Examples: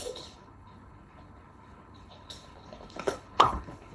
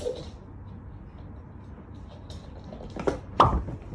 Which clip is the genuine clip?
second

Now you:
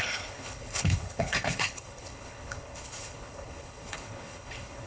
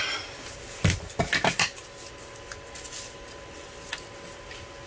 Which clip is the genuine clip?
second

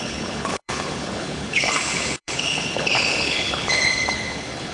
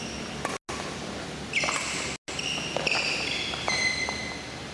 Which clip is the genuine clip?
second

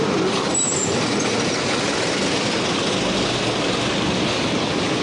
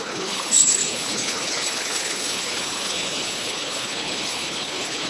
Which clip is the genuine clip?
first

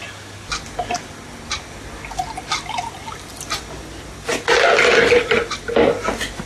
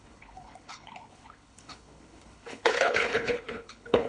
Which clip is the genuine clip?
first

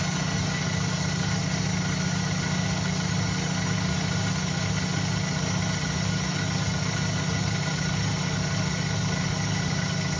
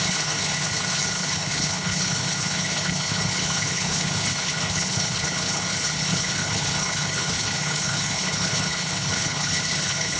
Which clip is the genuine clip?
first